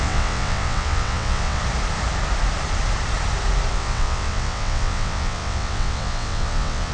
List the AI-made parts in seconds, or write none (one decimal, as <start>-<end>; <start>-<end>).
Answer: 0.0-1.6; 3.7-6.9